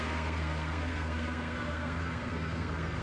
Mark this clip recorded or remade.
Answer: remade